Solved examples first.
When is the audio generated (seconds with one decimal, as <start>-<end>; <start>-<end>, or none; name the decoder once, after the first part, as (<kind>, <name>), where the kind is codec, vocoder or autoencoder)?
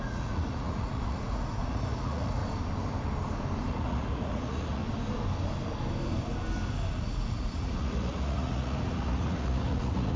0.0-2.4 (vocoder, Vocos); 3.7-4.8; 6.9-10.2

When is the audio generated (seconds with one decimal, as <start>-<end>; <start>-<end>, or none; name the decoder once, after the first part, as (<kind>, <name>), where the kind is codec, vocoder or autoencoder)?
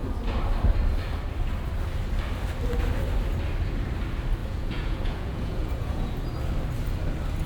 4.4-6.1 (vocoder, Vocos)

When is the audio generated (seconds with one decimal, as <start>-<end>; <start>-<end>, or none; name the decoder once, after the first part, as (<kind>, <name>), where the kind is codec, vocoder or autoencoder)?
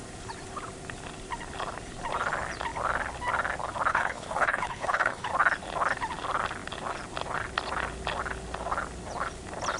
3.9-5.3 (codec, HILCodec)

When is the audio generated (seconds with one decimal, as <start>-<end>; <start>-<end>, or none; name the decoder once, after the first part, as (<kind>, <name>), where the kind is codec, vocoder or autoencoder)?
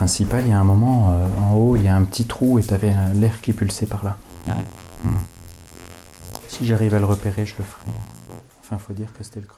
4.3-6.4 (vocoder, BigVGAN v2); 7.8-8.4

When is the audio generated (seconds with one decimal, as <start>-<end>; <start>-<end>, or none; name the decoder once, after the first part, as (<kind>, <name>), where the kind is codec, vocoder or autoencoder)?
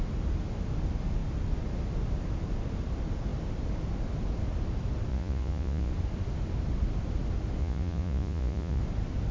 5.1-5.9 (vocoder, Vocos); 7.6-8.8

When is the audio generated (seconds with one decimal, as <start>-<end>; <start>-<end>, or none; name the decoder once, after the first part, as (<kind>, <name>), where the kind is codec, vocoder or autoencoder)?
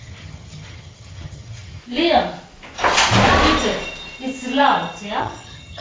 0.0-1.8 (vocoder, HiFi-GAN); 5.2-5.8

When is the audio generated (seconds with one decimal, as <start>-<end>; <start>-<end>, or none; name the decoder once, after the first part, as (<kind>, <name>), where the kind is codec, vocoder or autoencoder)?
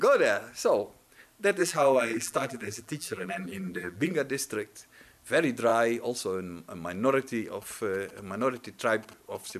1.6-4.1 (vocoder, BigVGAN v2)